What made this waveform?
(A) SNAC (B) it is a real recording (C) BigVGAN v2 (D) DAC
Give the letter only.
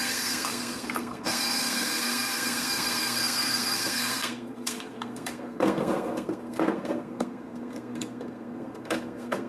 A